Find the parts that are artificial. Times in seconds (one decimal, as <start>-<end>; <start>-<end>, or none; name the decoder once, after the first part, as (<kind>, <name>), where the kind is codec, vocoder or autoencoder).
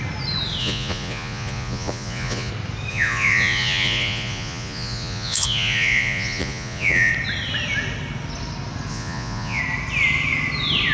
0.6-2.5 (vocoder, Vocos); 2.9-7.1; 8.9-9.6